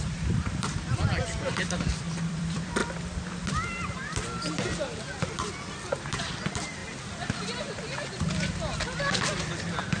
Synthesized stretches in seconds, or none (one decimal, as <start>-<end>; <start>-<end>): 0.0-2.8; 5.9-6.8; 9.0-10.0